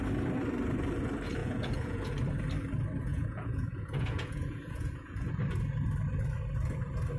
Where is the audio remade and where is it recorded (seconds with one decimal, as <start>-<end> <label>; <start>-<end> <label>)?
0.0-1.4 recorded; 1.4-2.1 remade; 2.1-3.1 recorded; 3.1-5.3 remade; 5.3-7.2 recorded